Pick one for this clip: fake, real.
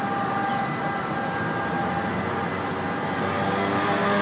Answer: real